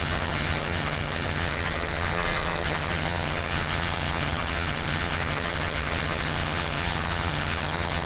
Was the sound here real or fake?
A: fake